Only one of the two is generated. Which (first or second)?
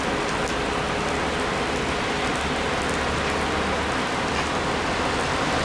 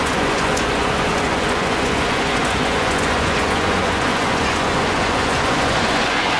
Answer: second